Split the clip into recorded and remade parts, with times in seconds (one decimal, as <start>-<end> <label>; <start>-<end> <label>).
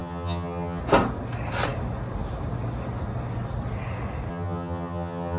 0.0-0.8 remade; 0.8-4.3 recorded; 4.3-5.4 remade